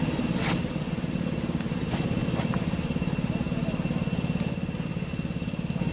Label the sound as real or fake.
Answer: real